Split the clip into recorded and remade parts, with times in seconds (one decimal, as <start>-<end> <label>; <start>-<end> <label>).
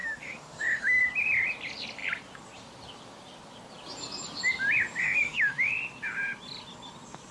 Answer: 0.0-1.0 remade; 1.0-5.0 recorded; 5.0-5.7 remade; 5.7-7.3 recorded